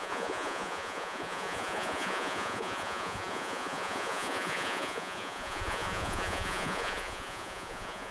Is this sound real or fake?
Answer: fake